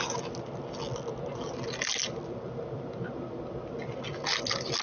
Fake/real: real